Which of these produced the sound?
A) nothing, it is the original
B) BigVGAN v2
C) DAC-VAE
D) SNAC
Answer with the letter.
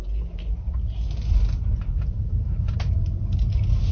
A